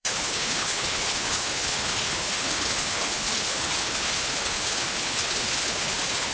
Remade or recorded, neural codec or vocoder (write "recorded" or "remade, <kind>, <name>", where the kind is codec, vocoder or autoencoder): remade, codec, HILCodec